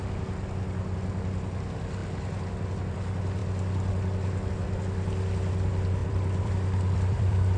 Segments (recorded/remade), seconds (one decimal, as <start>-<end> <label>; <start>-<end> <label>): 0.0-6.0 recorded; 6.0-7.6 remade